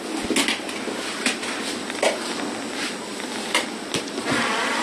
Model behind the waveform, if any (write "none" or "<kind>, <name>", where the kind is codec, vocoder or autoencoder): none